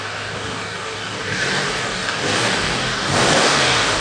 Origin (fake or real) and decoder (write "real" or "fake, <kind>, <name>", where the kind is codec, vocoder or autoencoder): fake, codec, DAC